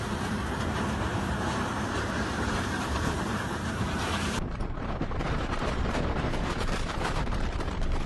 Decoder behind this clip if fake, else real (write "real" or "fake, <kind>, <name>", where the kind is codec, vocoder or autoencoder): fake, vocoder, BigVGAN v2